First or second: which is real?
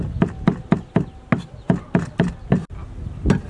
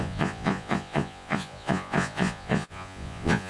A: first